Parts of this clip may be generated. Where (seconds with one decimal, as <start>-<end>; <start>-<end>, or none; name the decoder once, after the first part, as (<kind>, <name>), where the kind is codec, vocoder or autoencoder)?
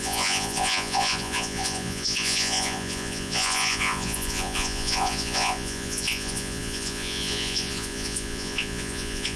0.0-9.4 (vocoder, Vocos)